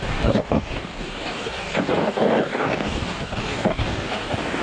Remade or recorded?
remade